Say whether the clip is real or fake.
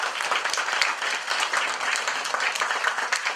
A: real